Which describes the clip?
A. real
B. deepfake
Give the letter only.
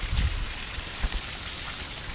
A